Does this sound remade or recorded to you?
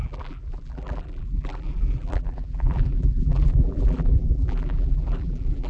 remade